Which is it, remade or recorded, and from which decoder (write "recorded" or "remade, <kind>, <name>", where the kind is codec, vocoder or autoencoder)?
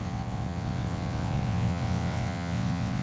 remade, vocoder, WaveNeXt